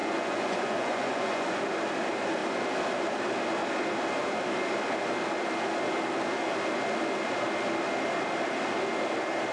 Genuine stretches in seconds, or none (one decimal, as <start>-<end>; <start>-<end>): 1.6-9.5